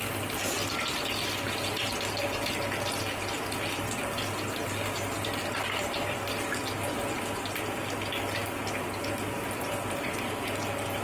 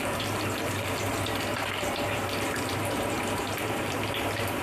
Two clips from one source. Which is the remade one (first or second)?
second